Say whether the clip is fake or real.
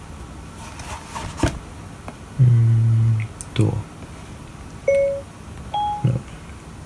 real